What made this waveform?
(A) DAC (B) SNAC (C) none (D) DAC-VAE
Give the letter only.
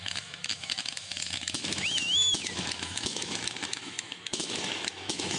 D